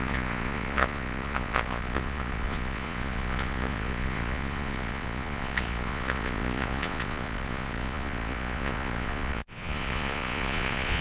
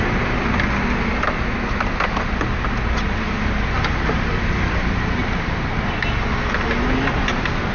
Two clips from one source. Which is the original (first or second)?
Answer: second